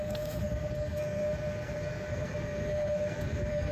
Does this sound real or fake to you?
fake